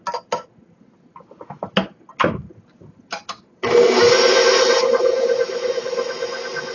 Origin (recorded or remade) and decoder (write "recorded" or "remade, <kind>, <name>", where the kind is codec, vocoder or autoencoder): recorded